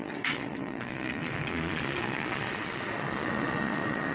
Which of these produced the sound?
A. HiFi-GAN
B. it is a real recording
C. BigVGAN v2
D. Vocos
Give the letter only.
D